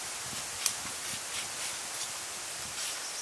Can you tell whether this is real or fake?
real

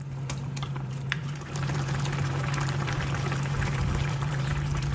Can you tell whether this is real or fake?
fake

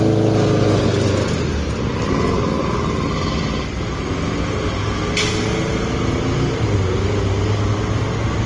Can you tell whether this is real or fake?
real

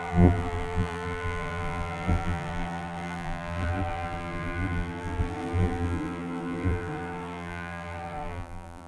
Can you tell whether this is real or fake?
fake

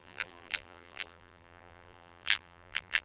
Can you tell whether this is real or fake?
fake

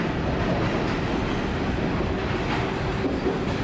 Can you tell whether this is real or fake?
real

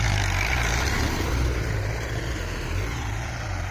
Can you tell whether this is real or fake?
real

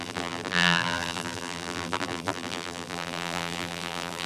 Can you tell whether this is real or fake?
fake